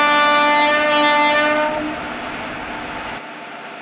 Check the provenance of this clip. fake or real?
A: real